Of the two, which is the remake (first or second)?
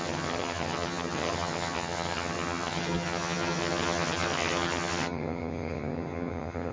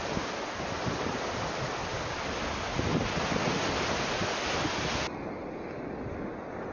first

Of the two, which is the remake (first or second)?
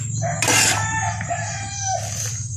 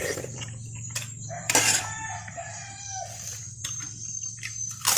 second